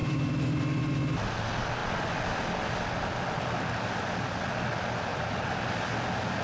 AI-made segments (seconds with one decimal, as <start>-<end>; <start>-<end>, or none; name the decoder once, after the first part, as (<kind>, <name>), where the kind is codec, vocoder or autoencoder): 0.0-0.8 (vocoder, BigVGAN v2); 1.8-4.4; 5.1-5.7